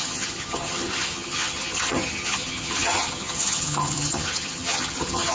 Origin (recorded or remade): remade